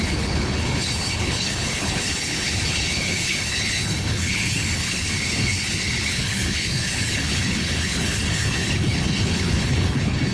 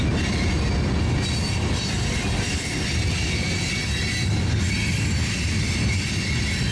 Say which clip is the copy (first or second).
first